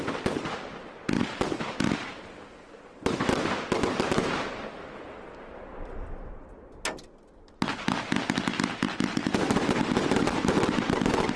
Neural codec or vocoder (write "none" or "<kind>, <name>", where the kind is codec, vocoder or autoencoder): none